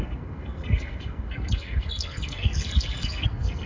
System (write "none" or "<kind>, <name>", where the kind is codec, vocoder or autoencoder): codec, SNAC